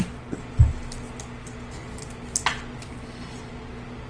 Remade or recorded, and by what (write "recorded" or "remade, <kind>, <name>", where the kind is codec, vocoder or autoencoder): recorded